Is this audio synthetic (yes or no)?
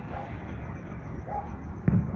yes